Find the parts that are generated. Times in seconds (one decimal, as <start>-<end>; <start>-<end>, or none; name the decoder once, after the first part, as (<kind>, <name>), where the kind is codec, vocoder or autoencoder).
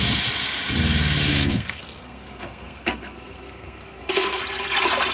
1.3-4.4 (codec, SNAC)